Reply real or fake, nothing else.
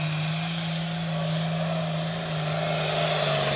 real